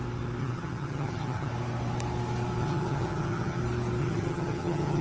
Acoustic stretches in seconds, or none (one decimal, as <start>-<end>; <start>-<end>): 0.0-0.4; 1.5-2.6; 3.6-4.0